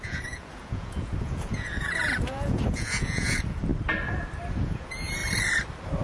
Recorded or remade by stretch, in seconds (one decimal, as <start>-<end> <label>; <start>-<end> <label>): 0.0-3.7 remade; 3.7-4.5 recorded; 4.5-5.2 remade; 5.2-6.0 recorded